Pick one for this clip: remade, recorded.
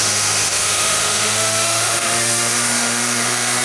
remade